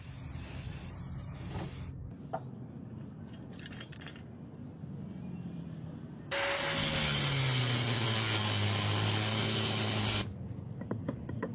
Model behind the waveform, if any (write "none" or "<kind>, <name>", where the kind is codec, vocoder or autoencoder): none